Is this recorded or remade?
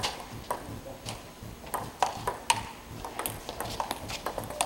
recorded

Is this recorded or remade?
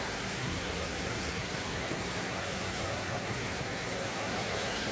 remade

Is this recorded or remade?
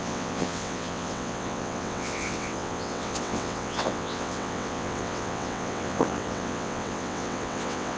remade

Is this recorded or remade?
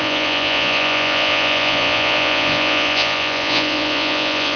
remade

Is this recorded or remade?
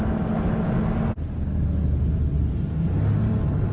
recorded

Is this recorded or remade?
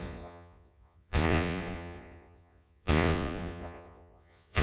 remade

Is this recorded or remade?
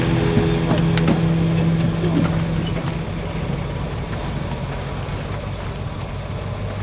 recorded